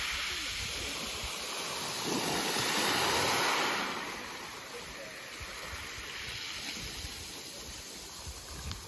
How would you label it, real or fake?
real